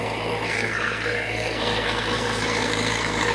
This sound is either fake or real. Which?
fake